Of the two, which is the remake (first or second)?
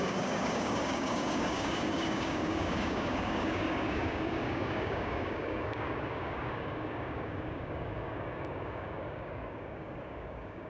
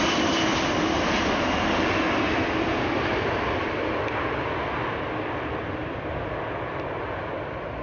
first